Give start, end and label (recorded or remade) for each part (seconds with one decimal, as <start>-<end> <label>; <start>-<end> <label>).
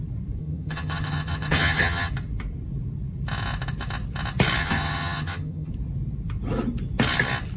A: 0.0-0.4 recorded; 0.4-2.1 remade; 2.1-4.6 recorded; 4.6-5.7 remade; 5.7-7.6 recorded